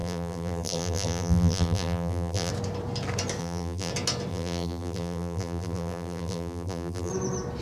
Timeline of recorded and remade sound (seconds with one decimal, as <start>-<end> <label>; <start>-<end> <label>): 0.0-2.5 remade; 2.5-3.4 recorded; 3.4-3.9 remade; 3.9-4.3 recorded; 4.3-7.1 remade; 7.1-7.6 recorded